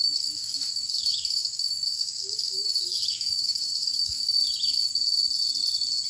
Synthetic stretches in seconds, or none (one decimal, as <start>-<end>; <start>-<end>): 0.0-4.4